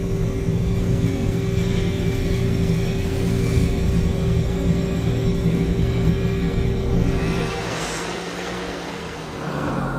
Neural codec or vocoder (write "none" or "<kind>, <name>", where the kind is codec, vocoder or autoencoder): codec, SNAC